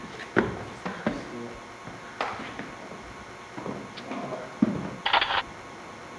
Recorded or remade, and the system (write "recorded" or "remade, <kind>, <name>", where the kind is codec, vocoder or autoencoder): recorded